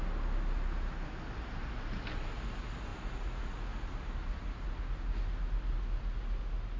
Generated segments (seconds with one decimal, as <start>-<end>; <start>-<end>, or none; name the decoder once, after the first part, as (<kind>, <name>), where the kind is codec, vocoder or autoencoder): none